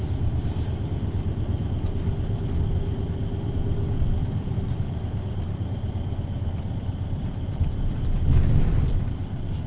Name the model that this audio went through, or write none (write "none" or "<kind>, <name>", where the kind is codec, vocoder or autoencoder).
none